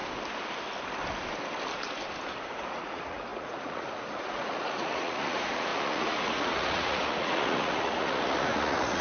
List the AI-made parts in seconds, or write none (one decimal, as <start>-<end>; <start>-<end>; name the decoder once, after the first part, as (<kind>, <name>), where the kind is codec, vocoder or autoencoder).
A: 2.7-9.0 (vocoder, Vocos)